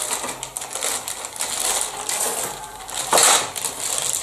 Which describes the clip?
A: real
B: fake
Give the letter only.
A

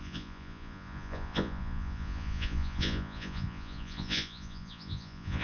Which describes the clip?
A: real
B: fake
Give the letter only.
B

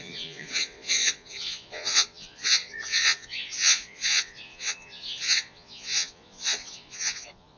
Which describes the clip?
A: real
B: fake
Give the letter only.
B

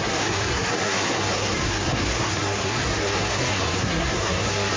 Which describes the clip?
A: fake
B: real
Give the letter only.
A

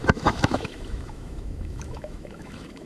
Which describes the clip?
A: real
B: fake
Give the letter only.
B